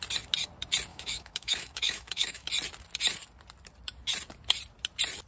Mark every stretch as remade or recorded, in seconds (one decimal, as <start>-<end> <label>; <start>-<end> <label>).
0.0-0.9 recorded; 0.9-2.5 remade; 2.5-5.3 recorded